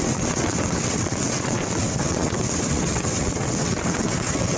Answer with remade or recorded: remade